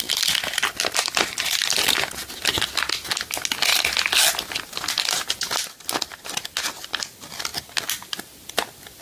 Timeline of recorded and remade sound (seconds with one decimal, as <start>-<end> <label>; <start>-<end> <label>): 0.0-9.0 recorded